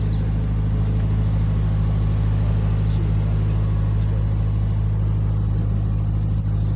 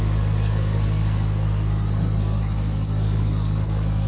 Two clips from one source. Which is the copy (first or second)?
second